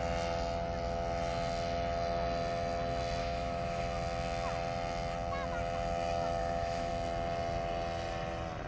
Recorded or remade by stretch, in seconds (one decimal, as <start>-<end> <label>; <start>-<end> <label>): 0.0-3.2 recorded; 3.2-3.8 remade; 3.8-6.4 recorded; 6.4-6.9 remade; 6.9-8.7 recorded